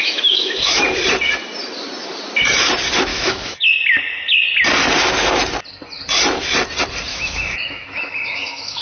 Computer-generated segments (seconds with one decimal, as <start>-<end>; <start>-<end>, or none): 0.0-0.8; 3.1-3.6; 7.1-8.8